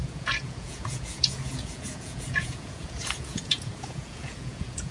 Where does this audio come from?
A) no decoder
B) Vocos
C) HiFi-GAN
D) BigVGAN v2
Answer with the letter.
B